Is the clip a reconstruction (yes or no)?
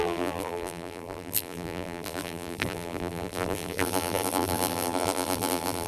yes